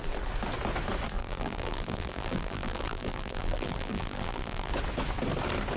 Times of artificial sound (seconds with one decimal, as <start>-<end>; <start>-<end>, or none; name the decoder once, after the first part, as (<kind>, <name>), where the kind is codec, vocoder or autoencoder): 1.2-4.7 (vocoder, BigVGAN v2)